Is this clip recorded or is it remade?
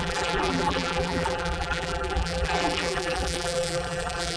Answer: remade